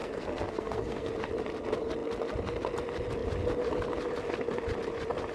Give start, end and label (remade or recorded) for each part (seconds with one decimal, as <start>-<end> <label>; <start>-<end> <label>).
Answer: 0.0-1.1 remade; 1.1-5.3 recorded